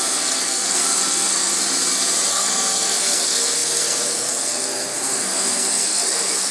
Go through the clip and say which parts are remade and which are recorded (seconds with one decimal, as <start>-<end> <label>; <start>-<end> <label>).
0.0-1.5 remade; 1.5-2.3 recorded; 2.3-6.5 remade